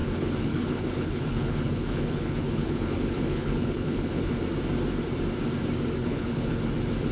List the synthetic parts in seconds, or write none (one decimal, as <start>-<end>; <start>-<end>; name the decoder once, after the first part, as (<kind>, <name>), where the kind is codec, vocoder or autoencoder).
0.0-4.3 (codec, HILCodec); 6.0-6.6